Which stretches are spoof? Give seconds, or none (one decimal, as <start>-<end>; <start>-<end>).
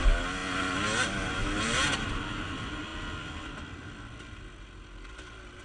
none